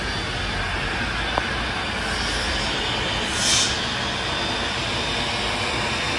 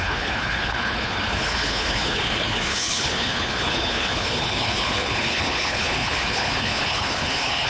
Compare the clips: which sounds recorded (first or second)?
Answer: first